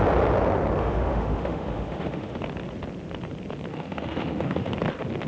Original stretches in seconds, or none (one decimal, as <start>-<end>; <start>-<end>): 0.0-0.8; 2.4-3.7; 4.7-5.3